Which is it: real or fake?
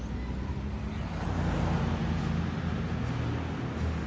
real